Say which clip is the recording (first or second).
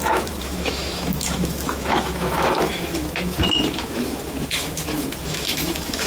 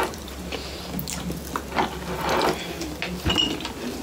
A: second